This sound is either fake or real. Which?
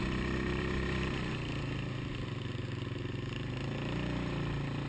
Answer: real